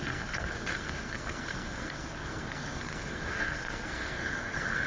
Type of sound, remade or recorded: remade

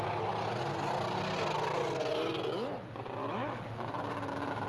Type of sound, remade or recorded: recorded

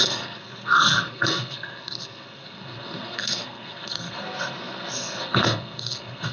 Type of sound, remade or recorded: remade